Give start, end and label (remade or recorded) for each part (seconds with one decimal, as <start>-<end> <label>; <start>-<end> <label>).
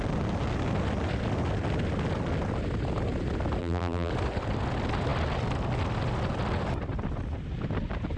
0.0-3.6 recorded; 3.6-4.1 remade; 4.1-8.2 recorded